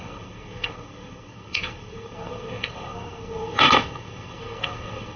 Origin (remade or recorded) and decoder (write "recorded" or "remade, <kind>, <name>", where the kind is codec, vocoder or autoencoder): remade, codec, SNAC